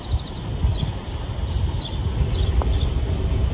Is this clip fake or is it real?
real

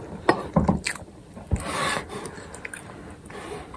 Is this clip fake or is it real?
fake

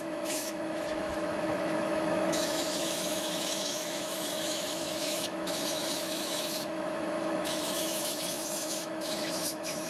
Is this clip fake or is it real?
fake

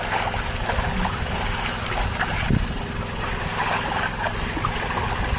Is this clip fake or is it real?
real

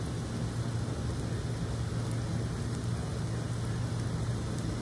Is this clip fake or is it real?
real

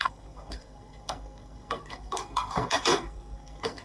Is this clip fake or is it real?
fake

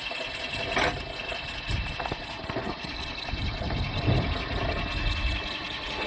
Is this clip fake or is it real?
real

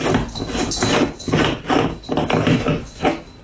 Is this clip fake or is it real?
real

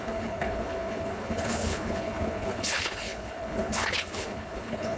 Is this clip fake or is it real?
fake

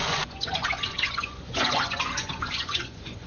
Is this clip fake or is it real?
fake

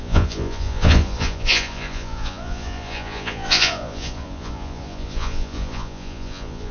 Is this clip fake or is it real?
fake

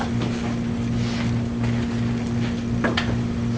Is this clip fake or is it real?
real